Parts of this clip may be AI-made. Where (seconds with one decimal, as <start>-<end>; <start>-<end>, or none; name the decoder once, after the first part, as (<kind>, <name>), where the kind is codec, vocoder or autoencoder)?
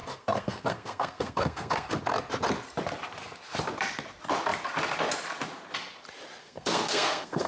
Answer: 0.0-2.0 (codec, SNAC); 6.4-7.5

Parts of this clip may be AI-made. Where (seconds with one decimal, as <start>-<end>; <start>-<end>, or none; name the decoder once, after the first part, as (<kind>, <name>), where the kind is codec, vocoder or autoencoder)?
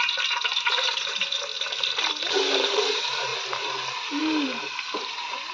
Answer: 0.0-1.5 (vocoder, BigVGAN v2); 2.1-5.5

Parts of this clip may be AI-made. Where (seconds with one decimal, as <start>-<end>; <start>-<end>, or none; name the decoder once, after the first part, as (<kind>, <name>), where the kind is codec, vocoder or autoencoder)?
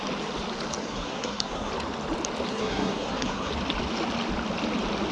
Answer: 0.8-1.7 (codec, SNAC); 2.5-3.5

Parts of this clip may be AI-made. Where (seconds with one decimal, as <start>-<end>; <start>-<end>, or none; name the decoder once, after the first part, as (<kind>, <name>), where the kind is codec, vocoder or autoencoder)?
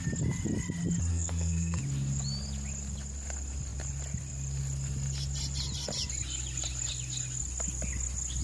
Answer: 1.1-1.8 (codec, SNAC)